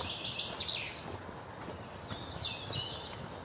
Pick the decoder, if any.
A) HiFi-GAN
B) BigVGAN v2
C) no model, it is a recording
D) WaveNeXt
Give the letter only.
C